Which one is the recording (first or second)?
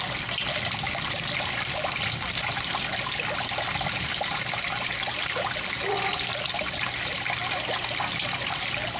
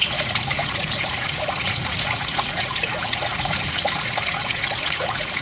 first